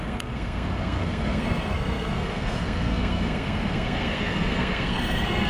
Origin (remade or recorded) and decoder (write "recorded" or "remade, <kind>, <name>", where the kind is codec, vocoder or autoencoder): remade, codec, SNAC